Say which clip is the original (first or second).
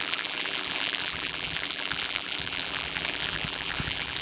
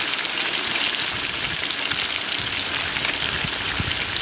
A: second